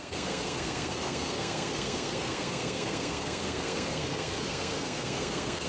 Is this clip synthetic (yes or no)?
yes